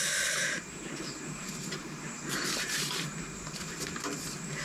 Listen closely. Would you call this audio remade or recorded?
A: remade